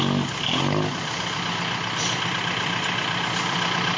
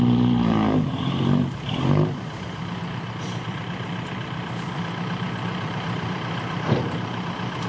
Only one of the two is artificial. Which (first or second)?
second